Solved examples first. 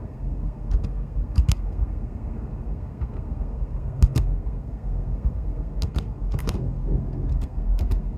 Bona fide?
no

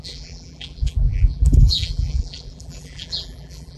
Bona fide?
no